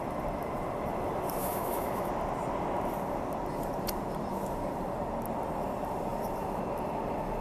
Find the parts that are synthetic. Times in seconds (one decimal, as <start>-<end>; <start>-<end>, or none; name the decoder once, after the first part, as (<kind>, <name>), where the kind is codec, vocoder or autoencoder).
1.4-2.1 (autoencoder, DAC-VAE)